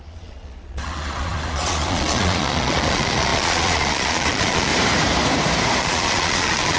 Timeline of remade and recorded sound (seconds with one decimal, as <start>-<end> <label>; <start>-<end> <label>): 0.0-4.7 remade; 4.7-5.8 recorded; 5.8-6.8 remade